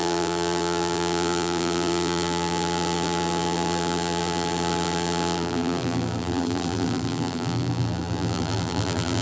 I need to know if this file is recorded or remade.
remade